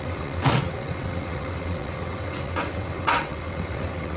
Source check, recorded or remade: remade